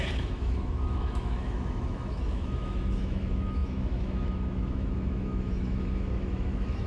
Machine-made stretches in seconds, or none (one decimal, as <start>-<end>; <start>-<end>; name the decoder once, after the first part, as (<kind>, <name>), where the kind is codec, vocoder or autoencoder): 0.0-6.9 (autoencoder, DAC-VAE)